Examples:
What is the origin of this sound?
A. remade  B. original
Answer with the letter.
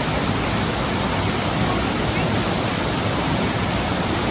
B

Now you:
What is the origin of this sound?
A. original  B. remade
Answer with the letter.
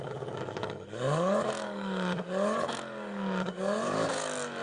B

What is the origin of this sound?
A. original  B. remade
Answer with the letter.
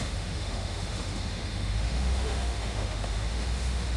B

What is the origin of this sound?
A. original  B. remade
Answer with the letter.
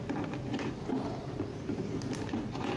A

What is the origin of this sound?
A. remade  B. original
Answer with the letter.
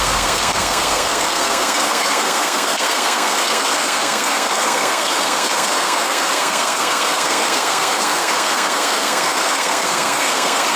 A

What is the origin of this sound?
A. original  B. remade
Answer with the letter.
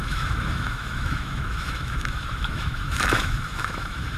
B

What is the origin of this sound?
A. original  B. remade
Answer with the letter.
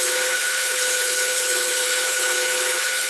B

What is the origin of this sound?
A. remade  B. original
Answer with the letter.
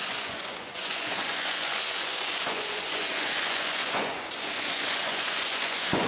A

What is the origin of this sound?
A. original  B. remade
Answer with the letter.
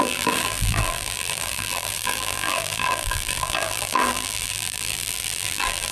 B